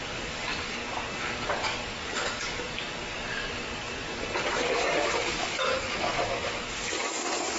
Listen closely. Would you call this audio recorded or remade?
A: remade